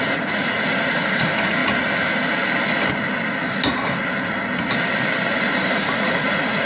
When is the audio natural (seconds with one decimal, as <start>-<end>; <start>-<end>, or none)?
1.6-5.6